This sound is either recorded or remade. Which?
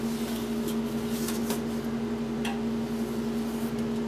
recorded